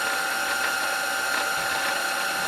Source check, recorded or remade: recorded